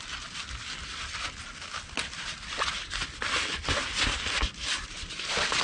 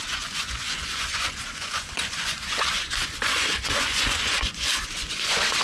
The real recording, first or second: first